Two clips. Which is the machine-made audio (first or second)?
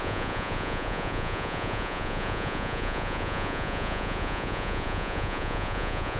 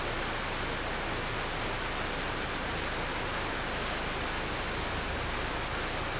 first